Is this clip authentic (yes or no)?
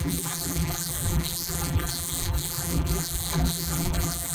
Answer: no